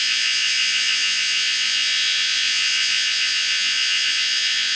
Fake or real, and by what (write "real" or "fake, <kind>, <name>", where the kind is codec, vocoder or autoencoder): fake, vocoder, Vocos